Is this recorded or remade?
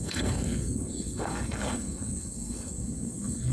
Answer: remade